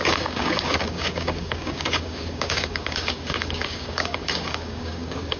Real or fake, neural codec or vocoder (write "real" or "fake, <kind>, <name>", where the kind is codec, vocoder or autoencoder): fake, codec, DAC